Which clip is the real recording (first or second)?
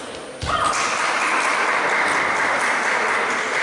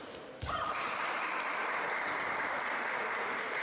first